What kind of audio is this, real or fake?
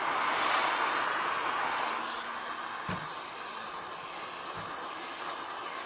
real